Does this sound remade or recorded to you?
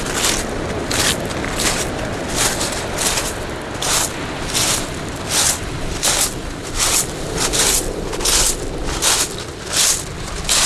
recorded